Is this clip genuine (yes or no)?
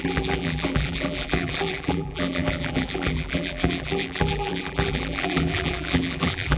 no